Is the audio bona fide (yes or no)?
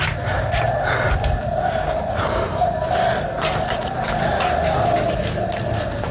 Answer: yes